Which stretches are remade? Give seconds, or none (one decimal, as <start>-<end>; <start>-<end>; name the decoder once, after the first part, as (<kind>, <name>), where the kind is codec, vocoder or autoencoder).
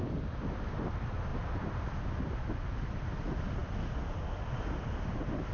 none